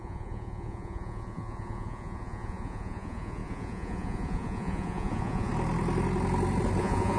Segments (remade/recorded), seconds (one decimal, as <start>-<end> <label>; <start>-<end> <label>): 0.0-5.5 remade; 5.5-6.8 recorded; 6.8-7.2 remade